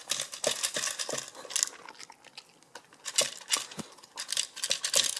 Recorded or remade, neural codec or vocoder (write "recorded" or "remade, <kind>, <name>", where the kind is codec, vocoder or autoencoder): recorded